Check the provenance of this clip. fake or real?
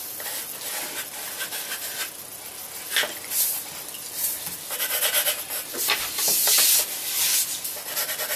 real